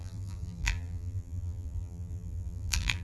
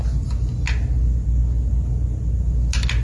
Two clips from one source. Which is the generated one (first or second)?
first